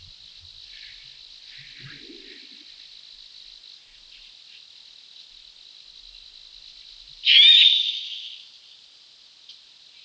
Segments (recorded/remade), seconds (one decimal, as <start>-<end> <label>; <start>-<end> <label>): 0.0-10.0 recorded